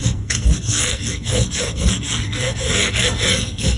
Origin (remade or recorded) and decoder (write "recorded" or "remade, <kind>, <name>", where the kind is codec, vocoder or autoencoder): remade, codec, SNAC